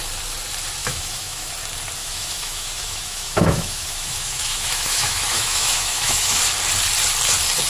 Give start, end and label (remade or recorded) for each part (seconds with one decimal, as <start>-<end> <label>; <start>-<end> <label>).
0.0-0.8 recorded; 0.8-1.5 remade; 1.5-2.0 recorded; 2.0-6.4 remade; 6.4-7.7 recorded